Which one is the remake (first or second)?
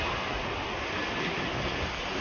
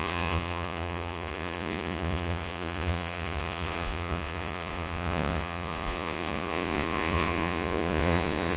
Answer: second